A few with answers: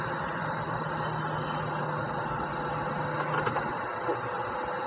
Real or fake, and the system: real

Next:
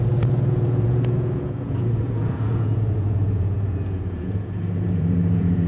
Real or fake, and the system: fake, vocoder, Vocos